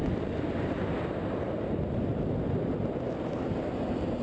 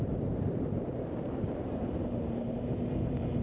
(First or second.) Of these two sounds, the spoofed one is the second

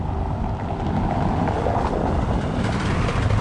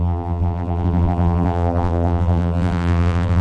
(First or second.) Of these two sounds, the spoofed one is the second